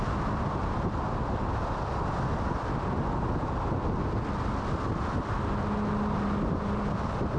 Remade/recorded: recorded